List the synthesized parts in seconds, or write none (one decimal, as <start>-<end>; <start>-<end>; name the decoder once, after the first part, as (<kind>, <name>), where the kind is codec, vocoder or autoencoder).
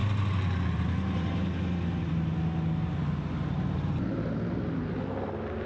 none